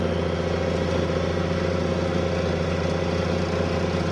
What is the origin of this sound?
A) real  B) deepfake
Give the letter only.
A